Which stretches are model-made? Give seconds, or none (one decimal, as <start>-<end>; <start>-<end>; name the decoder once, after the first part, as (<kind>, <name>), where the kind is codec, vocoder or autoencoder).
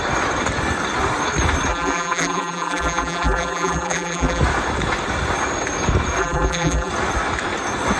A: 1.7-4.4 (vocoder, BigVGAN v2); 6.2-6.9